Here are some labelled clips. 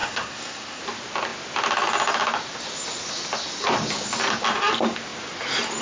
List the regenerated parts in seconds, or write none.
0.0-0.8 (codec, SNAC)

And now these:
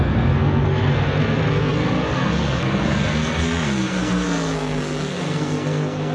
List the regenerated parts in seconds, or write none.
0.0-6.1 (codec, SNAC)

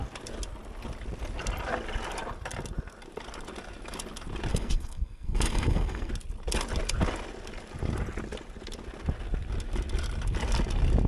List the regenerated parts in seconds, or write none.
4.5-6.1 (codec, SNAC)

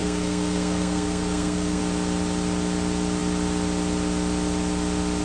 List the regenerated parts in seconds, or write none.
0.0-1.8 (codec, SNAC)